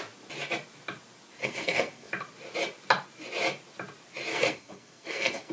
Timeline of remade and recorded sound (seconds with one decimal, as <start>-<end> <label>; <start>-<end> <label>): 0.0-1.4 recorded; 1.4-2.1 remade; 2.1-4.3 recorded; 4.3-5.5 remade